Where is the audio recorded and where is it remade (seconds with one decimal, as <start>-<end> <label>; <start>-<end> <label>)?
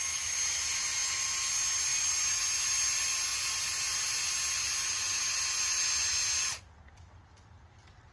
0.0-8.1 recorded